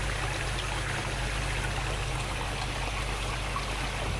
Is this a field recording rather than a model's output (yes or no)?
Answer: yes